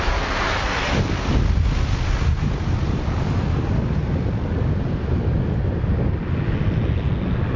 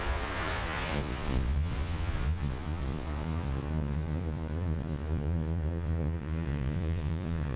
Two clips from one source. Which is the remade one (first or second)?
second